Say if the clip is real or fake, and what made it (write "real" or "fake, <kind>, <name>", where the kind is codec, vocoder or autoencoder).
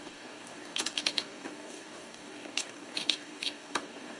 fake, codec, DAC